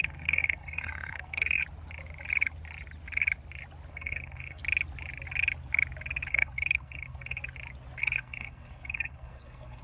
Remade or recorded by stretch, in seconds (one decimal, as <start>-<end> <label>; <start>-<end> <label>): 0.0-1.6 remade; 1.6-3.9 recorded; 3.9-4.6 remade; 4.6-6.3 recorded; 6.3-7.4 remade; 7.4-8.0 recorded; 8.0-9.8 remade